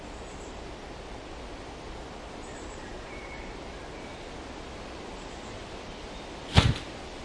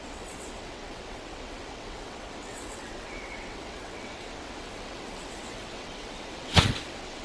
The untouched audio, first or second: first